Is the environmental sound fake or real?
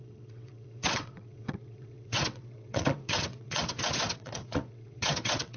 fake